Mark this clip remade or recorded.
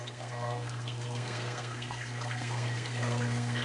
remade